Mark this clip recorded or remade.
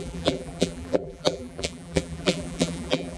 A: remade